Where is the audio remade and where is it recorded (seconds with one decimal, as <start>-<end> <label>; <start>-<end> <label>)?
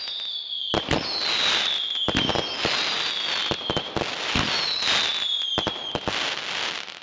0.0-7.0 recorded